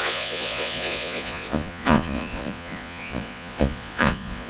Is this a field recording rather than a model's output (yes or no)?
no